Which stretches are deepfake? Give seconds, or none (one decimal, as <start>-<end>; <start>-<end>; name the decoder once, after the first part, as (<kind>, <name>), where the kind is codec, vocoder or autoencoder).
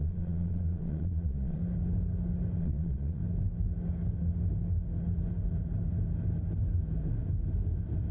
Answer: 0.0-1.6 (vocoder, Vocos); 2.6-3.2